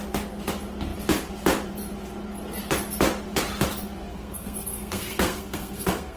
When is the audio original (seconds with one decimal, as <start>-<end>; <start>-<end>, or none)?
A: 0.0-4.1